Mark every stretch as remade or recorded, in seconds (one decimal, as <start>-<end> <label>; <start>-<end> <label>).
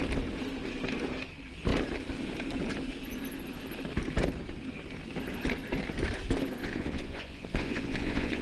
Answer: 0.0-6.6 recorded; 6.6-8.4 remade